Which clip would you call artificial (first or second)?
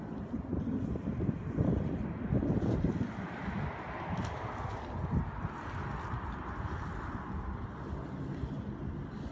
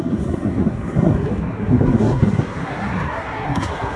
second